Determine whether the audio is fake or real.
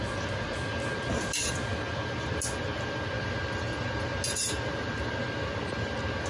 real